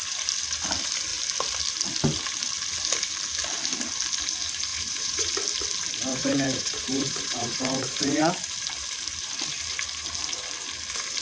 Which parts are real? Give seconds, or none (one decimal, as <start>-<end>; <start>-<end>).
0.0-4.7; 5.3-6.1; 8.3-11.2